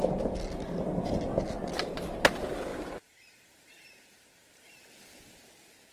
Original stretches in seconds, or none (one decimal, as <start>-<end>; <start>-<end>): 0.0-2.7; 4.9-5.9